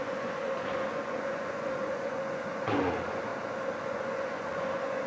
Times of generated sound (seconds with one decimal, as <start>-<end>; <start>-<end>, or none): 0.0-3.3; 3.8-5.1